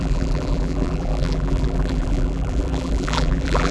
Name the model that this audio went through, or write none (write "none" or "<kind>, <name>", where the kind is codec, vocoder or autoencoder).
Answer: vocoder, BigVGAN v2